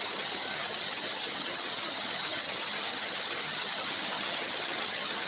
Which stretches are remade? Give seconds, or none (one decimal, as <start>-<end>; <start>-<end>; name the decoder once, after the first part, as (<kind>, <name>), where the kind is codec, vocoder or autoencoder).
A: 0.0-5.3 (vocoder, HiFi-GAN)